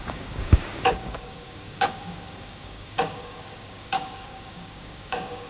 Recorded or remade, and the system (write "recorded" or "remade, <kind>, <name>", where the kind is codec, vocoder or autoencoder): remade, codec, DAC